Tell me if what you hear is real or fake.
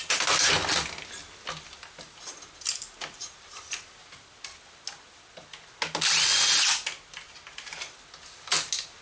real